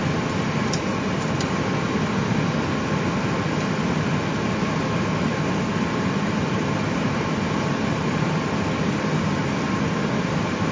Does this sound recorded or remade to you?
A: recorded